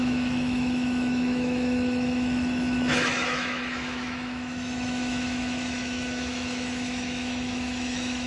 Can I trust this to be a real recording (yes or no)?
no